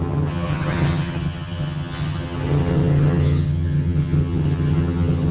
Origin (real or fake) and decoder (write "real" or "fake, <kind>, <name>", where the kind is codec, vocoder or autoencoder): fake, vocoder, HiFi-GAN